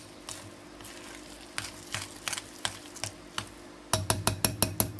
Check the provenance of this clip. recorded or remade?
recorded